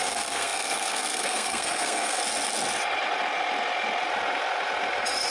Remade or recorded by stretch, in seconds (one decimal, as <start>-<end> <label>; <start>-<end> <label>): 0.0-2.2 remade; 2.2-5.3 recorded